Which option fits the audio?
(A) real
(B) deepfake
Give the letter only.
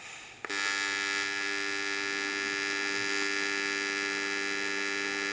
A